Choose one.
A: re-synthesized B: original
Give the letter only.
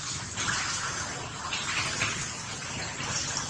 B